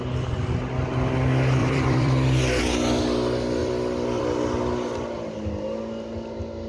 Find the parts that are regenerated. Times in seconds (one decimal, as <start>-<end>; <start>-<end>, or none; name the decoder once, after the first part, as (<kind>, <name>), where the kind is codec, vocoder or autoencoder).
1.6-2.6 (vocoder, BigVGAN v2); 3.6-4.2